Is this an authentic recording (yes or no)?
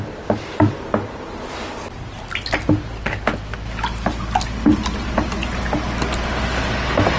yes